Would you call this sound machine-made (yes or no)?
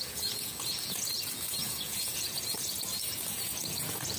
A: yes